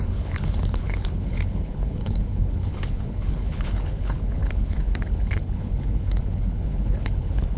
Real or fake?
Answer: fake